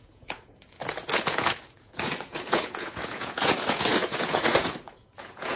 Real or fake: fake